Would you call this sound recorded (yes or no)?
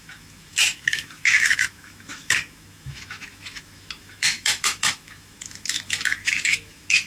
no